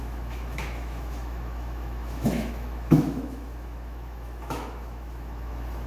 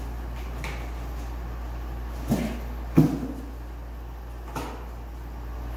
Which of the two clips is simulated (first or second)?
first